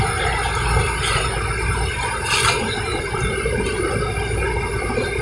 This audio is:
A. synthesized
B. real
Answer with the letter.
B